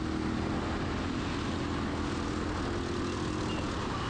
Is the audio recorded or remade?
recorded